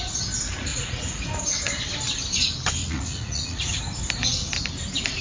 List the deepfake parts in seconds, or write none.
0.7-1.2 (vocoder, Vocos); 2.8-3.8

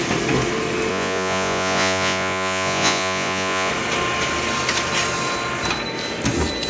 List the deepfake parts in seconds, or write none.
0.9-3.7 (vocoder, Vocos)

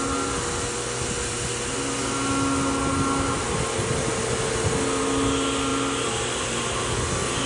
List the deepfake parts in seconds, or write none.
none

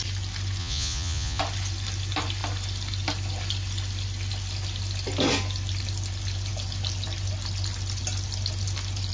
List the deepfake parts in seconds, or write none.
0.6-1.4 (vocoder, Vocos)

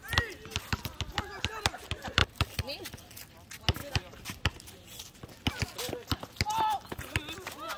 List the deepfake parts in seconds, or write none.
none

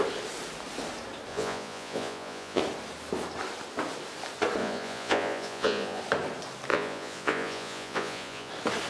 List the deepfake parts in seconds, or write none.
1.3-2.6 (vocoder, Vocos); 4.6-6.0; 6.7-8.5